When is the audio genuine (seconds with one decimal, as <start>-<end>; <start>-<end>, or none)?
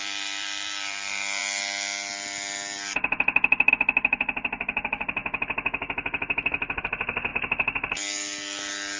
1.4-3.7; 5.2-6.8; 7.3-9.0